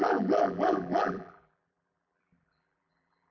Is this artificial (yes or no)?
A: yes